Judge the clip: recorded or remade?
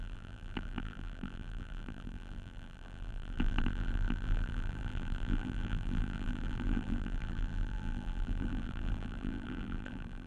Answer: remade